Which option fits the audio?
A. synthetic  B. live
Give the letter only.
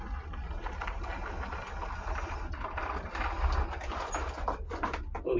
B